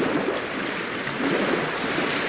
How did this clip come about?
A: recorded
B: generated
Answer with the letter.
A